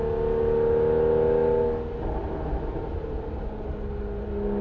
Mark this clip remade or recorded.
recorded